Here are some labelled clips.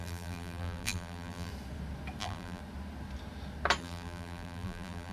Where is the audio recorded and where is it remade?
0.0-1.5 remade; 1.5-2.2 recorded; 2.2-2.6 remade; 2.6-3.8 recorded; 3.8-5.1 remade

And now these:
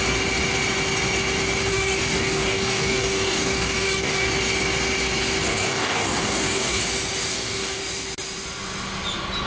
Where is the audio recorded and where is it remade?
0.0-1.7 recorded; 1.7-4.3 remade; 4.3-5.4 recorded; 5.4-6.8 remade; 6.8-7.3 recorded; 7.3-7.8 remade; 7.8-9.5 recorded